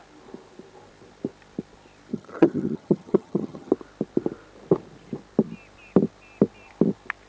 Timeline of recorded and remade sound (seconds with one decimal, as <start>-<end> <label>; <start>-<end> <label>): 0.0-2.1 recorded; 2.1-3.7 remade; 3.7-7.3 recorded